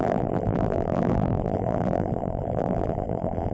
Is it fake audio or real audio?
fake